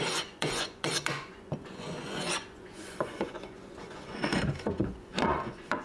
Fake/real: fake